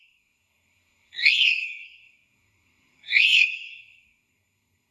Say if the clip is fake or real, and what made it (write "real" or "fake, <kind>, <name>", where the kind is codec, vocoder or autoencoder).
fake, codec, SNAC